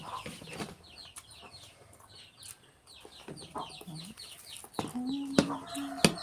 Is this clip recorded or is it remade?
recorded